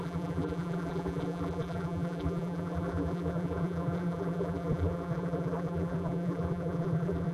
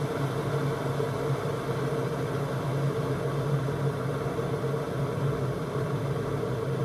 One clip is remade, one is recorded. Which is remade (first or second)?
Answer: first